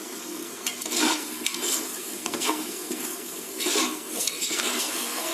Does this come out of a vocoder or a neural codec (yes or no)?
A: yes